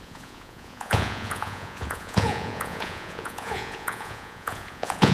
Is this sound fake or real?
fake